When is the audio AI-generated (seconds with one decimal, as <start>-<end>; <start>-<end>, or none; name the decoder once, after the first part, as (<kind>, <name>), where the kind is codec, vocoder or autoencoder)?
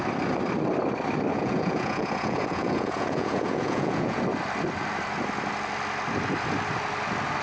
1.3-4.2 (vocoder, Vocos)